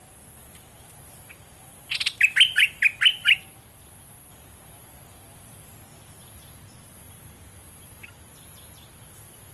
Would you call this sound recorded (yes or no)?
yes